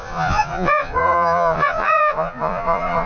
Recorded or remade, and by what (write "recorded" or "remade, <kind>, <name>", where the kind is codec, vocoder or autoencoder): remade, vocoder, Vocos